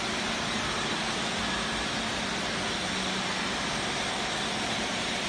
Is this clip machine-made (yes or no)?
no